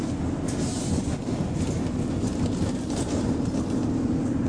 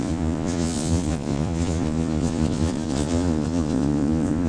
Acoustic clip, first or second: first